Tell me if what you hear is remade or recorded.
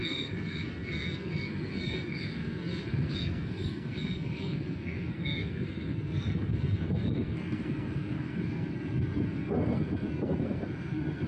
remade